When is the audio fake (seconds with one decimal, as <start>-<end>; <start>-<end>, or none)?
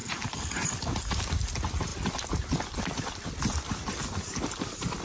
none